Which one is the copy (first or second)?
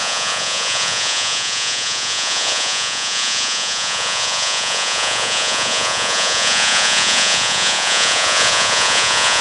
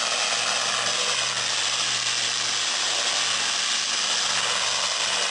first